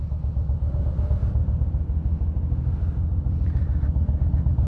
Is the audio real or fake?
real